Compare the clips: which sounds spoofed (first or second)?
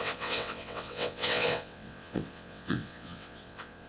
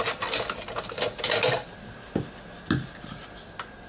first